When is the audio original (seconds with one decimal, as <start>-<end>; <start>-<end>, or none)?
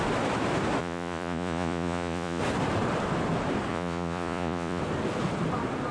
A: 0.0-0.8; 2.4-3.7; 4.8-5.9